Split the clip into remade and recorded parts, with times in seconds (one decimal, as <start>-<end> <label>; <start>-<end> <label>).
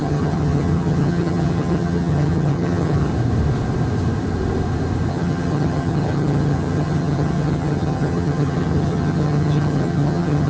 0.0-3.1 remade; 3.1-5.1 recorded; 5.1-10.5 remade